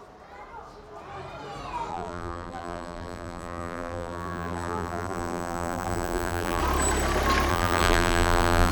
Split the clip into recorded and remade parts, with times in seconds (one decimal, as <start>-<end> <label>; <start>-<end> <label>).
0.0-1.9 recorded; 1.9-6.6 remade; 6.6-7.5 recorded; 7.5-8.7 remade